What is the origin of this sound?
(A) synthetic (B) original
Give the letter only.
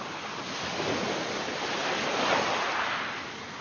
B